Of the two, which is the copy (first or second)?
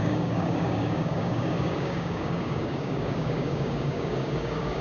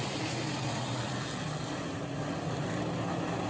first